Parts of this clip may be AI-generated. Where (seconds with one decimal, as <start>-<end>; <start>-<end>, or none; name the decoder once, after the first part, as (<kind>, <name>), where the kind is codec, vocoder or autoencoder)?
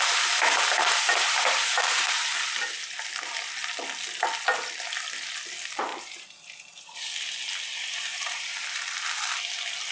0.7-2.4 (vocoder, BigVGAN v2); 5.9-7.2; 8.1-9.4